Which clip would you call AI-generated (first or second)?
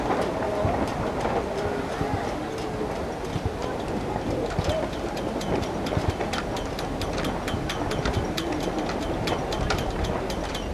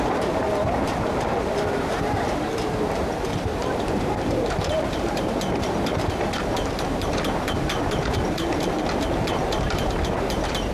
second